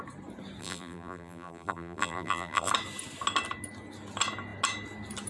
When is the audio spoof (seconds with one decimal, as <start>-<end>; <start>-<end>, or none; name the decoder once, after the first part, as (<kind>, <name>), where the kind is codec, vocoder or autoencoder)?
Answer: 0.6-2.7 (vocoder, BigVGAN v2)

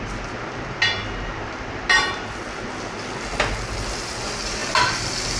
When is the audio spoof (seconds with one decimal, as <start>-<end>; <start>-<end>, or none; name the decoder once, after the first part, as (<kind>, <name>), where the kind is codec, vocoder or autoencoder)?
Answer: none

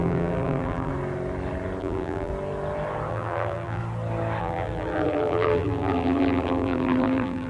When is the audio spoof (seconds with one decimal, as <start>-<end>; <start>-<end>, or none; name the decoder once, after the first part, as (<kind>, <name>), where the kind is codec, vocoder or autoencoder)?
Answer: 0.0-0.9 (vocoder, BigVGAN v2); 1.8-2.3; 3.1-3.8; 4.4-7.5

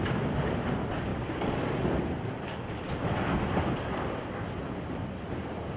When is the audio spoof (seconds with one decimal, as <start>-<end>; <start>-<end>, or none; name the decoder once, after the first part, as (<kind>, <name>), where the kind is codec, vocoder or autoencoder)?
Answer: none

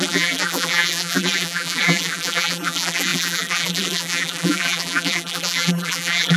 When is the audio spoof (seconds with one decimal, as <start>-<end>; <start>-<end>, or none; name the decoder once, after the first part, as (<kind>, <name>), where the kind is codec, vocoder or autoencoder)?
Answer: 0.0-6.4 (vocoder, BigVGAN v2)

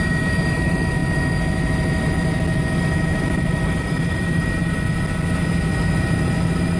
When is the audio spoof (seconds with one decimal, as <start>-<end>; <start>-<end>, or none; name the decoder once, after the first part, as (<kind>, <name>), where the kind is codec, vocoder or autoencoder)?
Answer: 0.0-1.0 (vocoder, BigVGAN v2); 2.8-4.6; 5.9-6.8

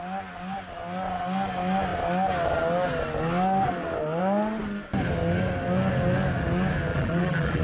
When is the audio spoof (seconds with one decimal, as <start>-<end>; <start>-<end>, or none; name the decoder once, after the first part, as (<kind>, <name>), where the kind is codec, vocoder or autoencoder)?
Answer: 6.9-7.6 (vocoder, BigVGAN v2)

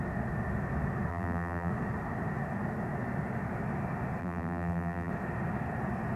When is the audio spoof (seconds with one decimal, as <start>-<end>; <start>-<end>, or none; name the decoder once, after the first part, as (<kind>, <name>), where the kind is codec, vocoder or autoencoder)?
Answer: 1.1-1.7 (vocoder, BigVGAN v2); 4.2-5.1